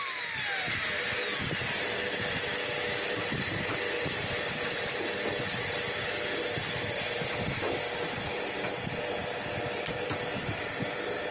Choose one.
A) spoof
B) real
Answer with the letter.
B